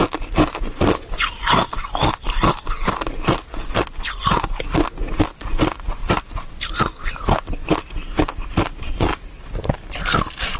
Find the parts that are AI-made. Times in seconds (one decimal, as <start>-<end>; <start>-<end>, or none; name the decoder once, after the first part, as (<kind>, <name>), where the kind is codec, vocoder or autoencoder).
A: 1.6-2.4 (vocoder, BigVGAN v2); 6.0-6.7